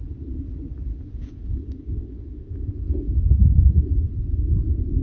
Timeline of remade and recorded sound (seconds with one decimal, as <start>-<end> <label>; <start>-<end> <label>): 0.0-0.9 recorded; 0.9-3.9 remade; 3.9-5.0 recorded